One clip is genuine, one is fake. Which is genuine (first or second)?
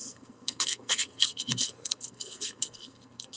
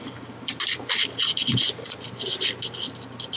second